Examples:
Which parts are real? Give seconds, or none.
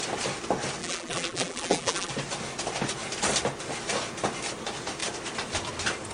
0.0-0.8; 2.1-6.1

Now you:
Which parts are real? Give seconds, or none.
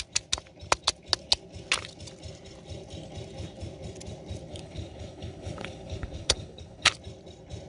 0.0-4.5; 6.9-7.7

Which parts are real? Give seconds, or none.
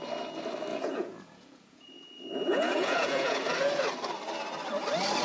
0.0-0.7; 3.4-5.2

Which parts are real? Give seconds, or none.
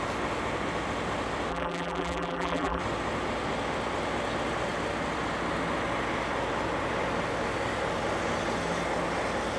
0.0-1.5; 2.8-9.6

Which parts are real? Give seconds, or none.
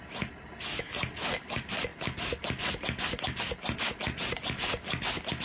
0.0-5.4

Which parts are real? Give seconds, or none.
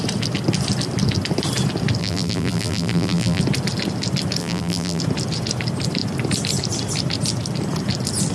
0.0-2.0; 3.4-4.4; 5.0-8.3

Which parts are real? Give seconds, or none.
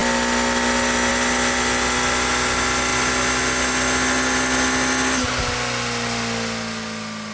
0.0-7.3